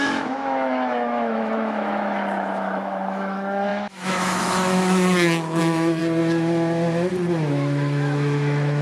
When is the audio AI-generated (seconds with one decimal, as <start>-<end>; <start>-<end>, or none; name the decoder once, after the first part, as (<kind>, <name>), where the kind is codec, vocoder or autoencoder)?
0.0-6.0 (autoencoder, DAC-VAE); 7.5-8.8